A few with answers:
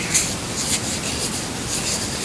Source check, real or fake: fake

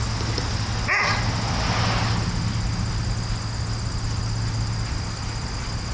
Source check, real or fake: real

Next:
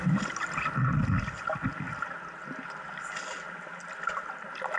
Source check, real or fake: real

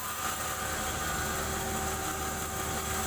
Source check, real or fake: real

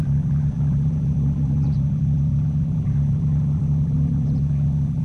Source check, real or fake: fake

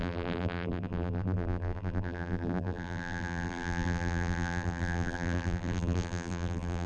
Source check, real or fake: fake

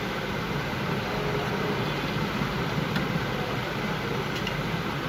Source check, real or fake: real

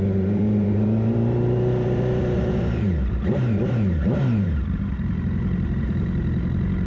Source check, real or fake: fake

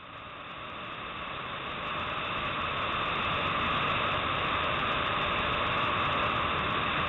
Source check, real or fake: real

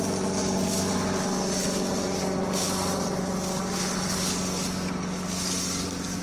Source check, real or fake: real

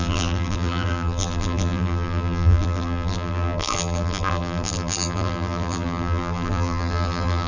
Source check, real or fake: fake